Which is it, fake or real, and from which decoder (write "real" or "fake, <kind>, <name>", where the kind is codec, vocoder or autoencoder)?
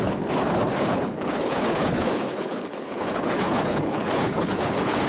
fake, codec, HILCodec